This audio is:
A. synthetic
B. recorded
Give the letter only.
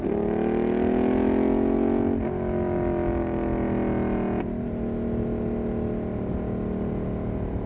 B